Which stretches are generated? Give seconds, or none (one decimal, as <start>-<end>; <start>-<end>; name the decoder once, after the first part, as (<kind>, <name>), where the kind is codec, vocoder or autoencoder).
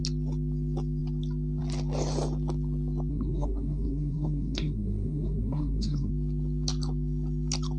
3.1-6.1 (codec, SNAC)